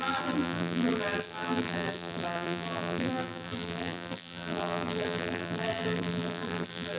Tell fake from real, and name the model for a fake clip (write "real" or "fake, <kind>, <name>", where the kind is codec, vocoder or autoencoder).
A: fake, vocoder, BigVGAN v2